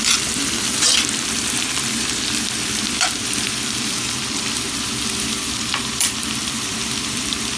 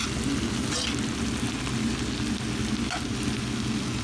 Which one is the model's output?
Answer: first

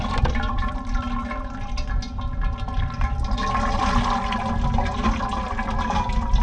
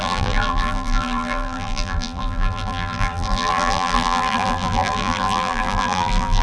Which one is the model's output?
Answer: second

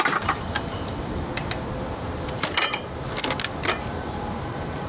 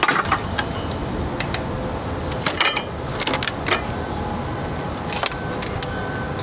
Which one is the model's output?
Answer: first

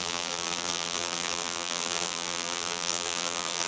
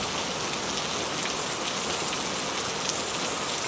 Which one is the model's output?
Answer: first